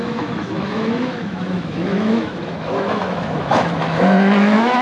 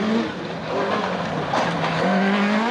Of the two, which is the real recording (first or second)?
second